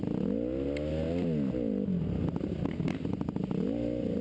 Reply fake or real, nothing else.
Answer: real